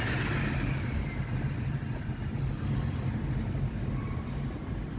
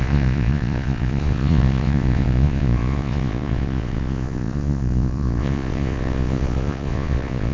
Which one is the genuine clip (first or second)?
first